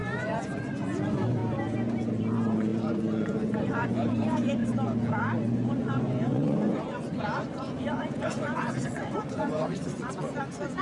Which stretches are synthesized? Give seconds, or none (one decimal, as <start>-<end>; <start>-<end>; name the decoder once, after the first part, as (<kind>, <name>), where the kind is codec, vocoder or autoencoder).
0.0-1.4 (vocoder, Vocos); 2.1-4.6; 5.2-10.8